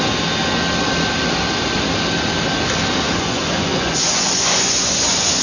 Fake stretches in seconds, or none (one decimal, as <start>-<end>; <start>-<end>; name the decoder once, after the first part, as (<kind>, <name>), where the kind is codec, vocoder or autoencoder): 3.2-5.4 (vocoder, Vocos)